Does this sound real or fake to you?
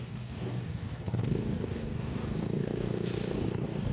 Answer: fake